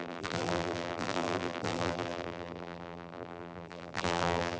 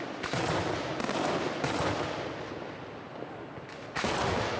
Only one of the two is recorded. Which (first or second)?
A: second